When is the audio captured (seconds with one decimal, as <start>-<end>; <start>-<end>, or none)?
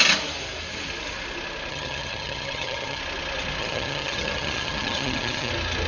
0.0-1.7; 3.0-3.6; 5.5-5.9